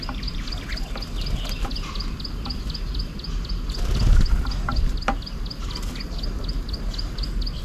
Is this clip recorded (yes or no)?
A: yes